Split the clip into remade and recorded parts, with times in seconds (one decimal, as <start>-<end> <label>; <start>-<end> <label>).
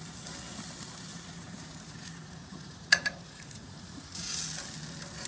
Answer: 0.0-1.1 recorded; 1.1-4.3 remade; 4.3-5.3 recorded